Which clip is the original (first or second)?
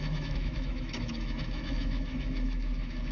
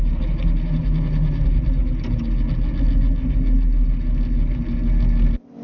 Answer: second